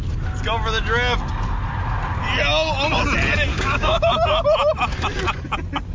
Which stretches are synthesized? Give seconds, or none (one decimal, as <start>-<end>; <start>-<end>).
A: 3.5-4.1